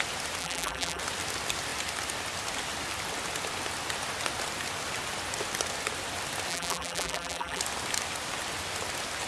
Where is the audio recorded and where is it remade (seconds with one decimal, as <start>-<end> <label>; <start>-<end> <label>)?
0.0-0.4 recorded; 0.4-1.0 remade; 1.0-6.5 recorded; 6.5-7.6 remade; 7.6-9.3 recorded